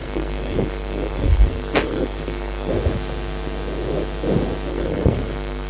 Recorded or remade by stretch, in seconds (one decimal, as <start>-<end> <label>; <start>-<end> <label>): 0.0-2.7 remade; 2.7-4.7 recorded; 4.7-5.7 remade